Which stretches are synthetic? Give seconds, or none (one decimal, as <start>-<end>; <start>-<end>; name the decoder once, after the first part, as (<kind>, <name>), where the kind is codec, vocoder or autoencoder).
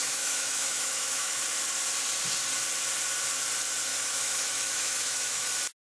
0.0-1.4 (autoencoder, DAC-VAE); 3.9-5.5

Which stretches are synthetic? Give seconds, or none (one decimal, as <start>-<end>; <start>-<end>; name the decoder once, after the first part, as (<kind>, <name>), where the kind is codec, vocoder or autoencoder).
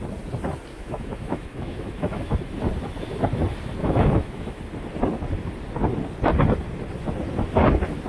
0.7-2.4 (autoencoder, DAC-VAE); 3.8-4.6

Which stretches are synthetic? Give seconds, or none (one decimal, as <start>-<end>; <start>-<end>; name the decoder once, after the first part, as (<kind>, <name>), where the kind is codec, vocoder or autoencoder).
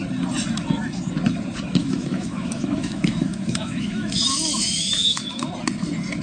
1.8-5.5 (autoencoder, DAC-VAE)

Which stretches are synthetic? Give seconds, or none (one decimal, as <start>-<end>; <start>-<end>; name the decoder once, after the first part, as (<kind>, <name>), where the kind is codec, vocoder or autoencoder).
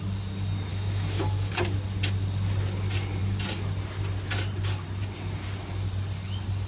0.7-1.5 (autoencoder, DAC-VAE)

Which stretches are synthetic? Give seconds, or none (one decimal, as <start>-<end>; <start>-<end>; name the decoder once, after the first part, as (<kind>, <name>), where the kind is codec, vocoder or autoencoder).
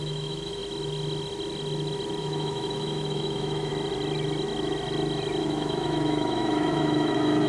0.0-0.6 (autoencoder, DAC-VAE); 2.2-3.7; 5.4-7.5